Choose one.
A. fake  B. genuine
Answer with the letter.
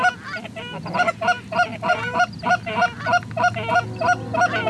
B